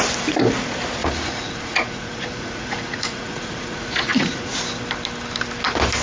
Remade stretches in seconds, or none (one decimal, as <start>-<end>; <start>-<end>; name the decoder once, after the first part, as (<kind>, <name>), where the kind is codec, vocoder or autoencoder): 1.0-4.6 (vocoder, Vocos)